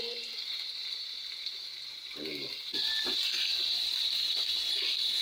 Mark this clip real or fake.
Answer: fake